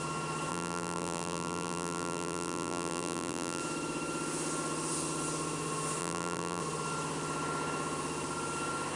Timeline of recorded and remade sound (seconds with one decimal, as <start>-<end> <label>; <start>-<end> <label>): 0.0-0.5 recorded; 0.5-3.6 remade; 3.6-6.0 recorded; 6.0-6.6 remade; 6.6-9.0 recorded